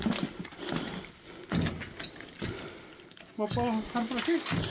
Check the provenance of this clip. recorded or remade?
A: recorded